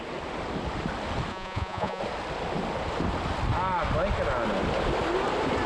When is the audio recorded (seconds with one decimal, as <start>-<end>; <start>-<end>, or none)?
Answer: 0.0-1.3; 2.0-5.7

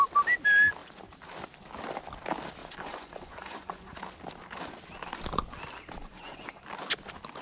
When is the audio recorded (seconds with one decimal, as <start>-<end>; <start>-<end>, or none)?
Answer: 0.0-2.6; 4.0-6.0; 6.5-7.4

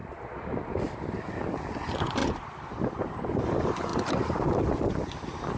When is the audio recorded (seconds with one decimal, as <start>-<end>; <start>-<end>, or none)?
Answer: 0.0-5.6